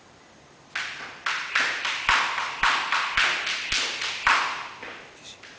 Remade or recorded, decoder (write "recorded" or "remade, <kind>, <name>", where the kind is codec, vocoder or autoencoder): recorded